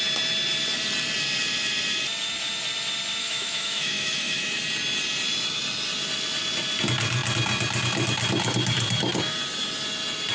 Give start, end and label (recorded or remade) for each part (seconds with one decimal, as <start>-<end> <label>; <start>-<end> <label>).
0.0-3.2 recorded; 3.2-4.6 remade; 4.6-10.3 recorded